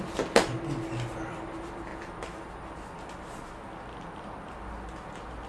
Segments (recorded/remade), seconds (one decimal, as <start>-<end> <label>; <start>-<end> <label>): 0.0-5.5 recorded